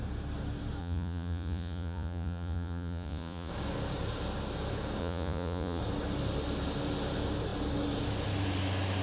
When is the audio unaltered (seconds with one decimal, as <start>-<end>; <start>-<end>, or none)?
0.0-0.8; 3.5-5.0; 5.8-9.0